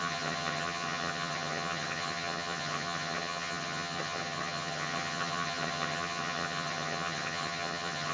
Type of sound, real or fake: fake